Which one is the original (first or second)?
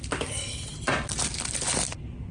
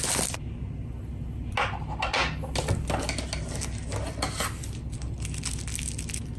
second